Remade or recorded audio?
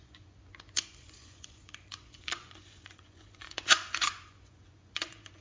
remade